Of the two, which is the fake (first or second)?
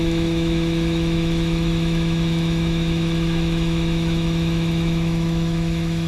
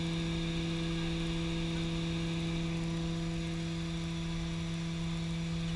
first